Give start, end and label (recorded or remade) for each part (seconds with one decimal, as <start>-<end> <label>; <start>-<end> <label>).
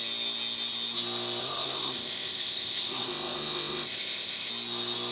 0.0-1.4 recorded; 1.4-4.5 remade; 4.5-5.1 recorded